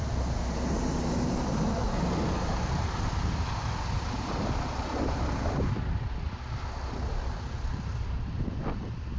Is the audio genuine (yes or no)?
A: yes